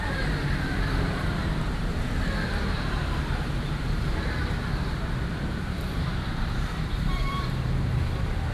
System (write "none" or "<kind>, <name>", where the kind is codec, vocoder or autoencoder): vocoder, BigVGAN v2